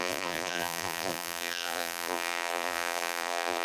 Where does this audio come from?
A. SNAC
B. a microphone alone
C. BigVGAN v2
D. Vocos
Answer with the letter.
C